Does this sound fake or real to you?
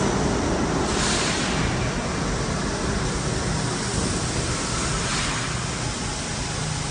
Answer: real